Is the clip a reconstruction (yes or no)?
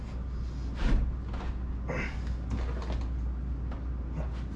no